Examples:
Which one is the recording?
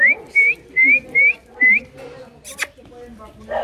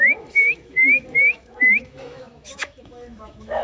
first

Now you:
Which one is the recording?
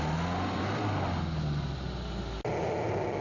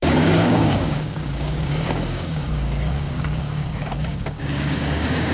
first